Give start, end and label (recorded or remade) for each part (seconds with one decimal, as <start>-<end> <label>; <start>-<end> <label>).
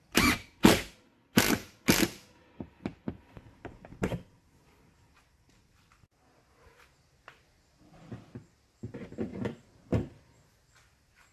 0.0-11.3 recorded